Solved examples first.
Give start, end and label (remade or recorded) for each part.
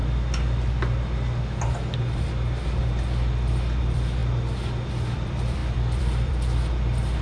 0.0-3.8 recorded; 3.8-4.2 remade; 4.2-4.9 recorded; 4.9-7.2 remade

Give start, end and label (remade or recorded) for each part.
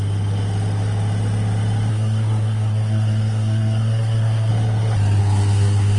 0.0-1.9 recorded; 1.9-4.5 remade; 4.5-5.2 recorded; 5.2-6.0 remade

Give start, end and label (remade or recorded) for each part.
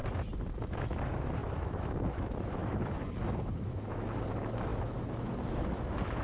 0.0-0.6 recorded; 0.6-6.2 remade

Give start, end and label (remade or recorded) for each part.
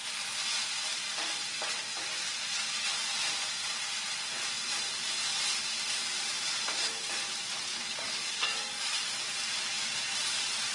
0.0-7.7 recorded; 7.7-9.2 remade; 9.2-10.7 recorded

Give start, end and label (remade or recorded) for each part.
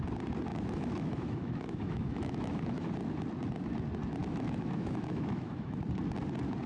0.0-0.5 recorded; 0.5-2.9 remade; 2.9-4.2 recorded; 4.2-5.8 remade; 5.8-6.7 recorded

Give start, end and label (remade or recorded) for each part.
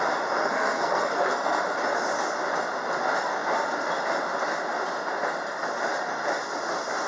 0.0-0.4 recorded; 0.4-1.6 remade; 1.6-7.1 recorded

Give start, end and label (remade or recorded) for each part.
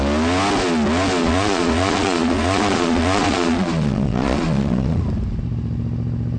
0.0-1.2 recorded; 1.2-5.0 remade; 5.0-6.4 recorded